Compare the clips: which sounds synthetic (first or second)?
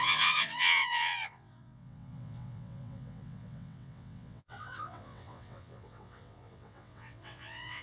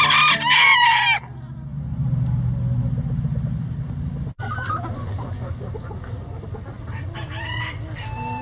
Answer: first